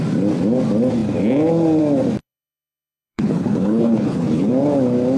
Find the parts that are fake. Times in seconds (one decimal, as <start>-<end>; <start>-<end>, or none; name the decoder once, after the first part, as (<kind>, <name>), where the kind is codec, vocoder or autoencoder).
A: 2.2-4.5 (codec, HILCodec)